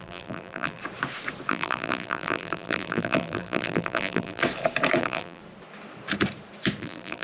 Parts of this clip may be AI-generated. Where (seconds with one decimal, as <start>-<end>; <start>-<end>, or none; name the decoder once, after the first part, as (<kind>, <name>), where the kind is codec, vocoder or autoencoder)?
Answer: 0.0-0.8 (vocoder, BigVGAN v2); 1.5-4.4; 5.0-5.4; 6.8-7.2